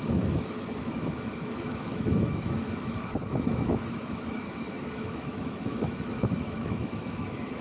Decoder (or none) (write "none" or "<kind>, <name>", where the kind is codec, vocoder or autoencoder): autoencoder, DAC-VAE